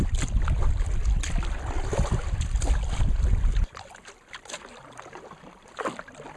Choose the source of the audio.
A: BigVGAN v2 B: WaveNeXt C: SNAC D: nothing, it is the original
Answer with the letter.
D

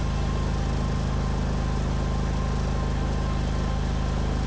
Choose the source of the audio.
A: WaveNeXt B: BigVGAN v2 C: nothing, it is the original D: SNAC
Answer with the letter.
C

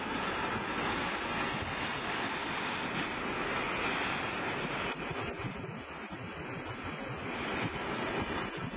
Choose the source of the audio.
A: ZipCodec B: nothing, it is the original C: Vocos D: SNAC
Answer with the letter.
B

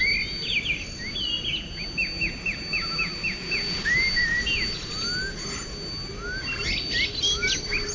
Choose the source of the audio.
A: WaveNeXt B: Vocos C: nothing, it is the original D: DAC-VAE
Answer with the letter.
C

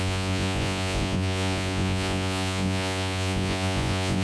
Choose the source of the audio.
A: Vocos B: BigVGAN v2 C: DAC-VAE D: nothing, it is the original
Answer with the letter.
A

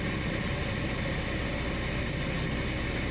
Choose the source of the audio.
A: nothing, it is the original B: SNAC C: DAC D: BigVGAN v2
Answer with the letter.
A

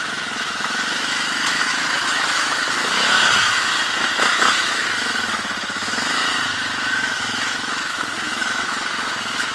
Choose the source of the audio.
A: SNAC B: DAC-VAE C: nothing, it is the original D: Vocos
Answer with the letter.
B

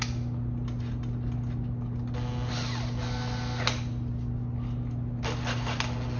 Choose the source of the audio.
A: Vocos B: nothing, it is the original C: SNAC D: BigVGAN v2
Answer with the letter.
B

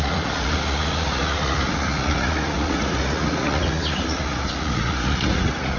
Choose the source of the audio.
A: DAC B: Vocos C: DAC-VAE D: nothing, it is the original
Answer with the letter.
B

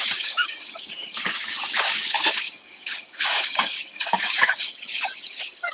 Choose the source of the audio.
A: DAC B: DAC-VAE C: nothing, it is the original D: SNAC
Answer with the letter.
A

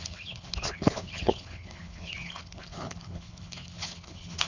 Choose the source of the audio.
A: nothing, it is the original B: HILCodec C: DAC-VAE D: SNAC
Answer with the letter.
B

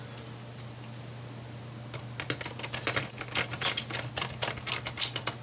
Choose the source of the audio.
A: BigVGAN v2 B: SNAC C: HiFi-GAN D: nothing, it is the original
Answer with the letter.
D